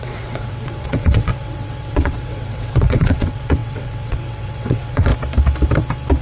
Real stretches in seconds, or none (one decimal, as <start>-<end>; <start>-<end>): 5.1-6.2